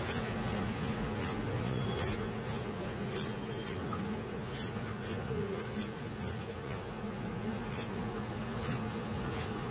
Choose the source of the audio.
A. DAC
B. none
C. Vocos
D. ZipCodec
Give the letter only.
C